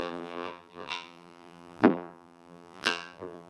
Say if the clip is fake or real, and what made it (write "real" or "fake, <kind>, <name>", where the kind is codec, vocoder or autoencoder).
fake, vocoder, BigVGAN v2